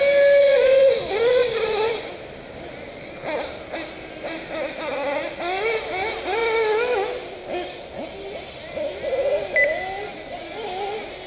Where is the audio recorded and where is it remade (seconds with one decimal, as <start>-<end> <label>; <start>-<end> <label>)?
0.0-0.4 recorded; 0.4-2.1 remade; 2.1-11.3 recorded